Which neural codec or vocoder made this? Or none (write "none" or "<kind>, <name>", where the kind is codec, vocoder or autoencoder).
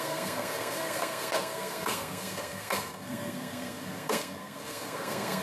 codec, SNAC